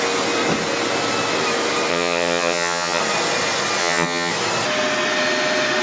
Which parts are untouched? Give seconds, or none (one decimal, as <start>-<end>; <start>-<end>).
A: 0.0-1.9; 3.0-3.8; 4.3-5.8